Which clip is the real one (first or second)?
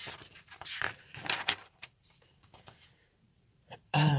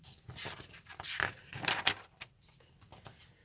second